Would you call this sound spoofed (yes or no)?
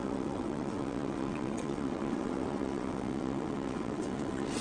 yes